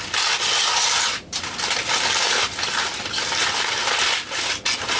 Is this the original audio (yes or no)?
yes